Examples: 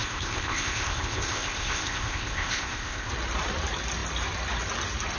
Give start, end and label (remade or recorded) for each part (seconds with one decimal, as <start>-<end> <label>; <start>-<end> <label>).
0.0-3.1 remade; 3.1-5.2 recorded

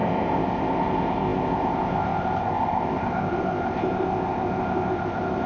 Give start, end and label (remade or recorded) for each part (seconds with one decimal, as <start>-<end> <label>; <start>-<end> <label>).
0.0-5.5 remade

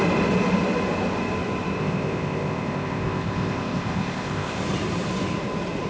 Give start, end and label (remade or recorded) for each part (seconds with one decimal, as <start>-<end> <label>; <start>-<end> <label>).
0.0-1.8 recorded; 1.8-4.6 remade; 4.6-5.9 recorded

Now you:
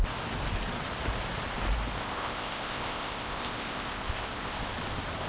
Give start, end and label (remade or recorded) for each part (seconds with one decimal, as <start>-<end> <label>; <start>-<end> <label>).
0.0-2.0 recorded; 2.0-4.6 remade; 4.6-5.3 recorded

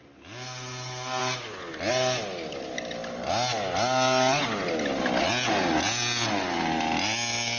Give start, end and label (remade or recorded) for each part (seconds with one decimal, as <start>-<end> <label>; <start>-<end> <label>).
0.0-7.6 recorded

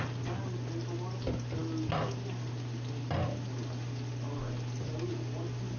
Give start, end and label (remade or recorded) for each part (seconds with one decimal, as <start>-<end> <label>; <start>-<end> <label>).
0.0-5.8 recorded

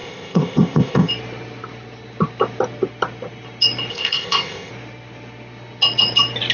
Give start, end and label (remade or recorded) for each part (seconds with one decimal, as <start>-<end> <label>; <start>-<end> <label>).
0.0-1.1 remade; 1.1-3.9 recorded; 3.9-4.7 remade; 4.7-6.5 recorded

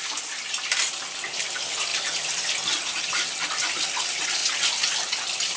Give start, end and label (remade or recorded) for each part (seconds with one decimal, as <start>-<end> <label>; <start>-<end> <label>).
0.0-5.6 recorded